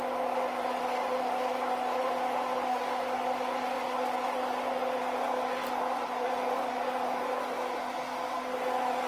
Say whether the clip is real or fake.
real